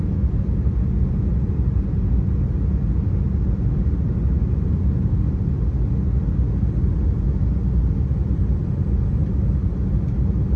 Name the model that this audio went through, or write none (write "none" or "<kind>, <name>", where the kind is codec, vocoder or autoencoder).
none